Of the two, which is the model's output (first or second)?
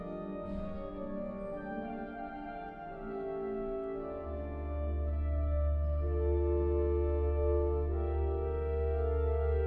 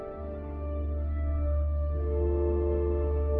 second